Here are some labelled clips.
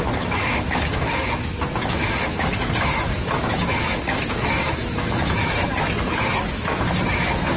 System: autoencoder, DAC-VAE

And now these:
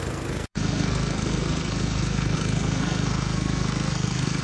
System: codec, SNAC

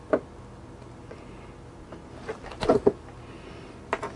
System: none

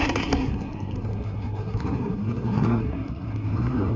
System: codec, SNAC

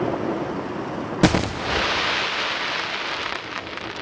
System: none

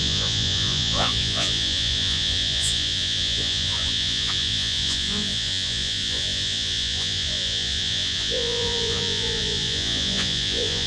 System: vocoder, Vocos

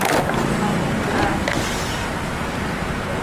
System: none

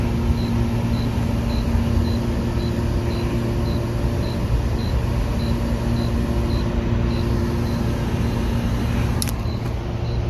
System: none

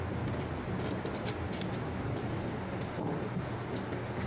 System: none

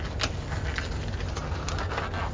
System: none